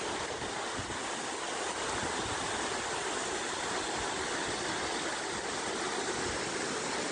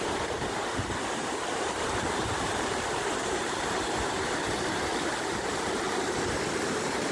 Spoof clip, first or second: second